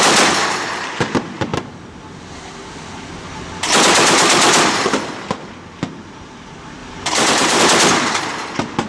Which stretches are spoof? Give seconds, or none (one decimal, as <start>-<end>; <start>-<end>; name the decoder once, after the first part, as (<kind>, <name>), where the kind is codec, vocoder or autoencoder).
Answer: 6.8-7.6 (vocoder, BigVGAN v2)